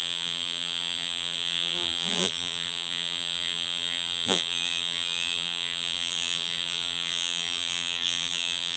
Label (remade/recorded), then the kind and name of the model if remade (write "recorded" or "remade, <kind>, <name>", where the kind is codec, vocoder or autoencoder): remade, vocoder, BigVGAN v2